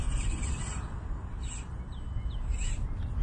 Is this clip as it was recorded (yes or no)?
yes